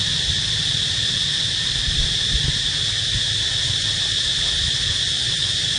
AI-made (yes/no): no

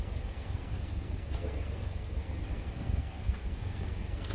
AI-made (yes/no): yes